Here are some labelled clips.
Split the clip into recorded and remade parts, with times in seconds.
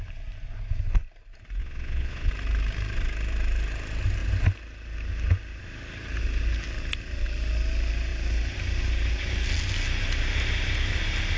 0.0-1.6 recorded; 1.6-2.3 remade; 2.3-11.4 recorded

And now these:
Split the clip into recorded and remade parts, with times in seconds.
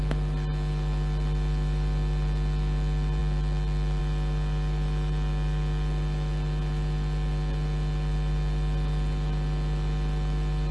0.0-10.7 recorded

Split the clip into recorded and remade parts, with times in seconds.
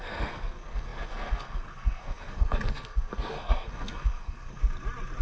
0.0-4.6 remade; 4.6-5.2 recorded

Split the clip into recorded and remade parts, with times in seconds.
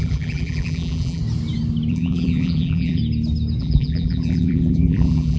0.0-1.2 remade; 1.2-1.9 recorded; 1.9-3.0 remade; 3.0-3.6 recorded; 3.6-5.4 remade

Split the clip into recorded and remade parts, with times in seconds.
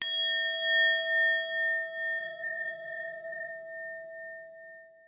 0.0-2.2 recorded; 2.2-3.5 remade; 3.5-5.1 recorded